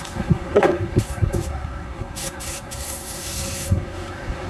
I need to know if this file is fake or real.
fake